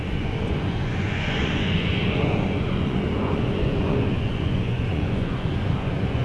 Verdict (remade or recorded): remade